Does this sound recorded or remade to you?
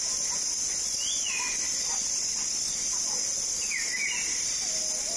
recorded